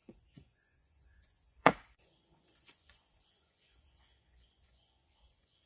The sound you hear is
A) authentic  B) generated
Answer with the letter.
B